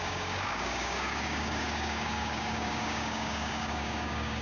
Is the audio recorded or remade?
remade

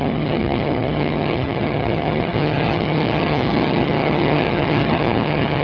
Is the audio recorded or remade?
remade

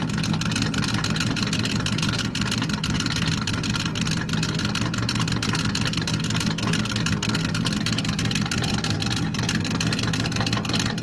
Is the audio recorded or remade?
recorded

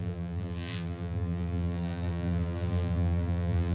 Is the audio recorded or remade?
remade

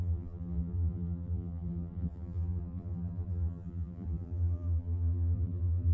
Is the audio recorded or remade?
remade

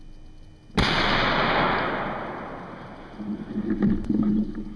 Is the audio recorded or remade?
recorded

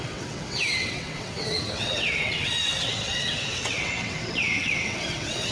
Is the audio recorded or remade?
remade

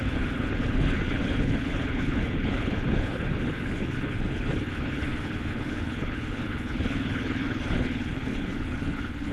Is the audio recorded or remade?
remade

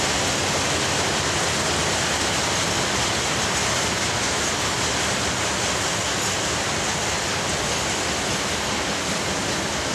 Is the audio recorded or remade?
recorded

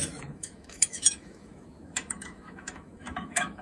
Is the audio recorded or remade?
remade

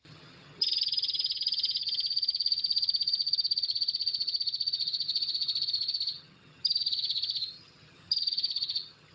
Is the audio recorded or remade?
remade